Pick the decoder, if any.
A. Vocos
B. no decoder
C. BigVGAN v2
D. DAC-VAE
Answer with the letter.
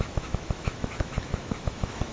D